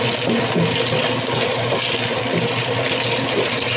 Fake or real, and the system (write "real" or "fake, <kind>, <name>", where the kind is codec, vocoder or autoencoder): real